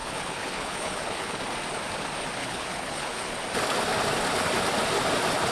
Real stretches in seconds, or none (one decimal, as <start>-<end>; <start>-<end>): 1.4-2.4; 3.4-5.5

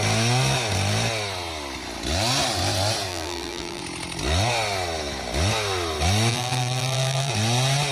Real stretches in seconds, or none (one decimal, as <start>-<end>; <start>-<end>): 0.0-3.1; 3.8-6.3; 7.3-7.9

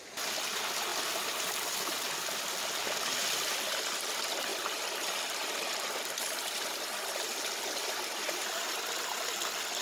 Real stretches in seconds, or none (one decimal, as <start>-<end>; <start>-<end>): 0.0-9.8

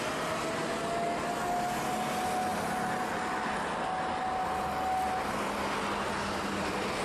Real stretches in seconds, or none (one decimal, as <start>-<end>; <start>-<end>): 0.0-7.0

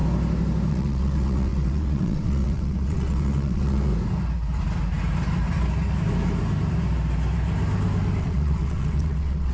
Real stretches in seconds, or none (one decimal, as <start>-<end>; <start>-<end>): 0.0-0.7; 3.9-8.2